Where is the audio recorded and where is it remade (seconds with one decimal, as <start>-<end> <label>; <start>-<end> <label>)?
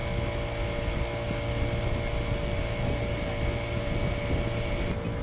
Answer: 0.0-5.2 recorded